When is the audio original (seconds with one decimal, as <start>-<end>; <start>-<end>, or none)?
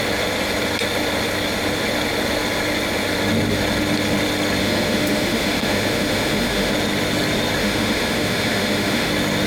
0.0-4.6; 6.7-7.6; 9.1-9.5